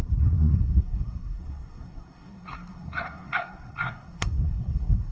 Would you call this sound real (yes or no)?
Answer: no